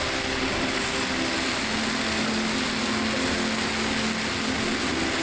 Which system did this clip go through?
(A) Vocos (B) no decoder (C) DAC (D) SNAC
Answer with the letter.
B